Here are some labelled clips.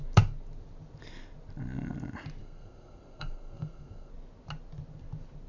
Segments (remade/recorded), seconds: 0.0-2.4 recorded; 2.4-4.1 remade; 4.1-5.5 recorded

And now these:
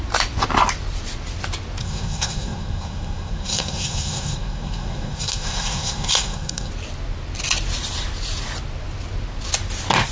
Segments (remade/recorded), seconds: 0.0-1.8 recorded; 1.8-6.7 remade; 6.7-10.1 recorded

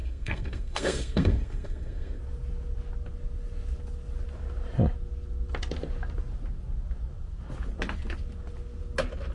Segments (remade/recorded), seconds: 0.0-2.2 remade; 2.2-9.3 recorded

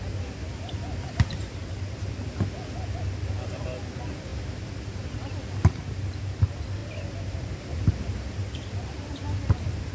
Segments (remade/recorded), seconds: 0.0-9.9 recorded

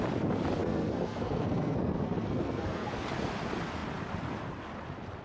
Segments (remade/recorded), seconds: 0.0-0.6 recorded; 0.6-2.9 remade; 2.9-5.2 recorded

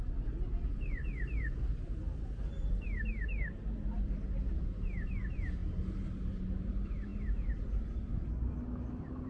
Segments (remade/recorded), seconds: 0.0-9.3 recorded